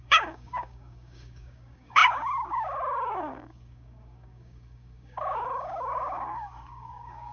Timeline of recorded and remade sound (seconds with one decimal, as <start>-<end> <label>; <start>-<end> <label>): 0.0-7.3 remade